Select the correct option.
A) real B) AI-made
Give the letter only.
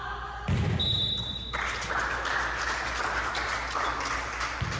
A